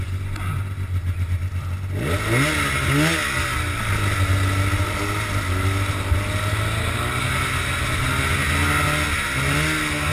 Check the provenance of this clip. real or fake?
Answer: real